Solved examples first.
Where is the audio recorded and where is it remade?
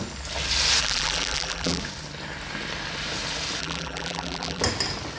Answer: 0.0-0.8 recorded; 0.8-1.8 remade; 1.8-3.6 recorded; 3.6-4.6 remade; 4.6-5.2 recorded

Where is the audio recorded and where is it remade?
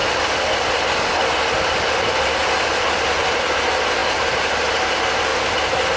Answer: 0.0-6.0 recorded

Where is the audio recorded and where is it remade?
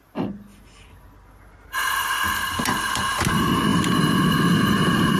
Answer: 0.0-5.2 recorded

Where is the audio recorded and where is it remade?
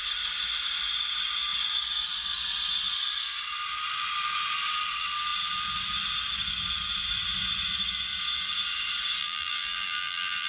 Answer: 0.0-9.2 recorded; 9.2-10.5 remade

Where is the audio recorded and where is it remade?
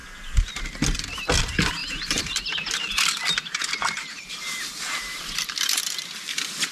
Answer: 0.0-1.8 recorded; 1.8-5.8 remade; 5.8-6.7 recorded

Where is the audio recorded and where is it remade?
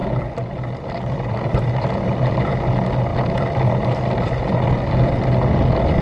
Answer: 0.0-2.4 remade; 2.4-3.1 recorded; 3.1-4.4 remade; 4.4-6.0 recorded